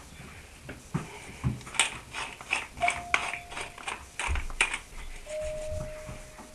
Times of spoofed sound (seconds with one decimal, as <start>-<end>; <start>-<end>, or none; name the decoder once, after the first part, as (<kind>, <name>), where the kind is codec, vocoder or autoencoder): none

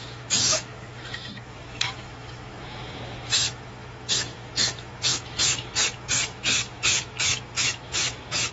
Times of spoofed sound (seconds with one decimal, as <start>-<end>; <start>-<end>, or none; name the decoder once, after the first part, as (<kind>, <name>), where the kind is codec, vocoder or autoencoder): 0.0-8.5 (autoencoder, DAC-VAE)